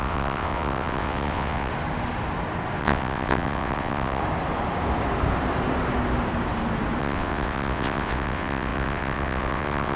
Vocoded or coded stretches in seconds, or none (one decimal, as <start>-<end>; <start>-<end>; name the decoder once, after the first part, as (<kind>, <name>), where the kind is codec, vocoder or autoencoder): 0.0-1.7 (vocoder, WaveNeXt); 2.8-4.2; 7.0-10.0